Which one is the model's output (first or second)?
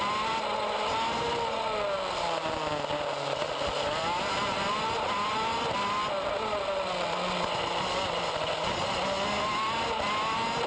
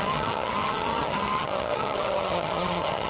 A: second